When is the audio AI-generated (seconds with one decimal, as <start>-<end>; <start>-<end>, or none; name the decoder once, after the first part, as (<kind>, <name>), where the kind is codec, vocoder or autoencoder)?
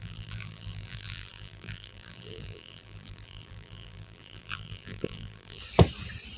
0.0-5.6 (vocoder, BigVGAN v2)